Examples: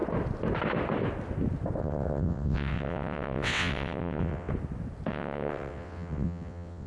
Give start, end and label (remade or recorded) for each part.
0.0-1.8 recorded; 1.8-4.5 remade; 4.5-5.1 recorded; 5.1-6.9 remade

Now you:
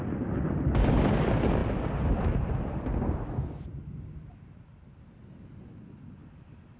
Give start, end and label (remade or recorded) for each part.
0.0-6.8 recorded

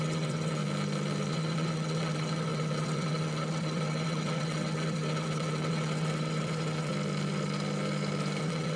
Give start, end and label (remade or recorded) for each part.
0.0-0.6 remade; 0.6-1.3 recorded; 1.3-6.9 remade; 6.9-8.4 recorded; 8.4-8.8 remade

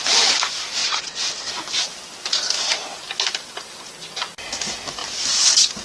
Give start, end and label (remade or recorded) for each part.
0.0-0.8 recorded; 0.8-1.5 remade; 1.5-5.8 recorded

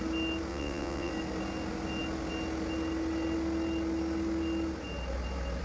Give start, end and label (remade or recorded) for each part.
0.0-0.5 recorded; 0.5-1.1 remade; 1.1-5.6 recorded

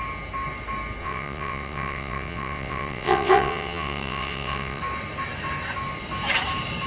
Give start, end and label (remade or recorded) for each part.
0.0-1.0 recorded; 1.0-4.8 remade; 4.8-6.9 recorded

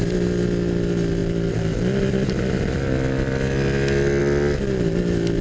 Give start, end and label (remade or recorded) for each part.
0.0-5.4 recorded

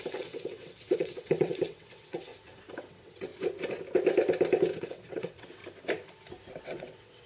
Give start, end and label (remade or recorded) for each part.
0.0-2.3 remade; 2.3-2.8 recorded; 2.8-3.3 remade; 3.3-4.8 recorded; 4.8-5.6 remade; 5.6-6.6 recorded; 6.6-7.3 remade